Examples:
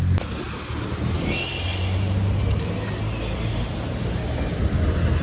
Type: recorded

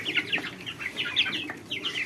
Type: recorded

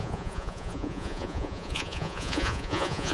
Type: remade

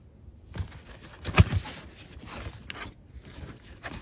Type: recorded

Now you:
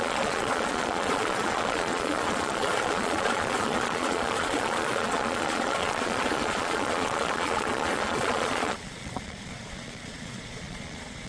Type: remade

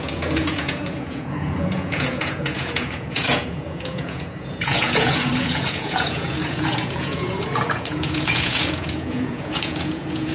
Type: remade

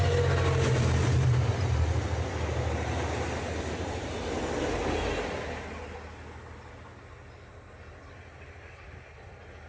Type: recorded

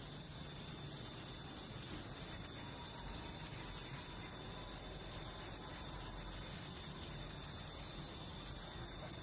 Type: recorded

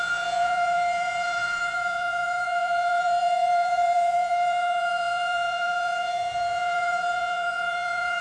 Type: remade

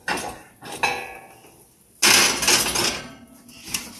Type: recorded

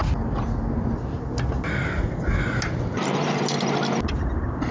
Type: recorded